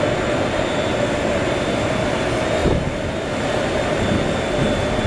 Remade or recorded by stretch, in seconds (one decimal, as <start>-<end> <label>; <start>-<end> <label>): 0.0-5.1 recorded